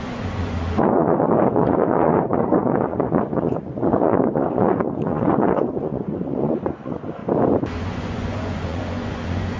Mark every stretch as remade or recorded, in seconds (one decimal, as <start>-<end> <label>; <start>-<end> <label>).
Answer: 0.0-7.2 remade; 7.2-7.8 recorded; 7.8-9.6 remade